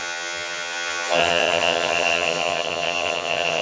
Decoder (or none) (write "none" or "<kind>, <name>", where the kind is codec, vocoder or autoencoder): vocoder, HiFi-GAN